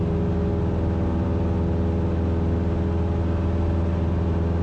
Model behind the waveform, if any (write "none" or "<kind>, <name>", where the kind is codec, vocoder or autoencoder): none